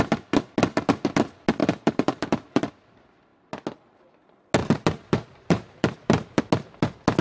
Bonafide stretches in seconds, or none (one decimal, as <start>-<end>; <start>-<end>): 0.0-1.6; 2.7-4.6; 6.4-7.2